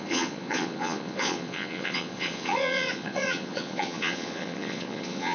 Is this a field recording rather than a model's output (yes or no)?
no